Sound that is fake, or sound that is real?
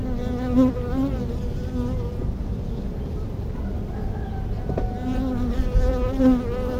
real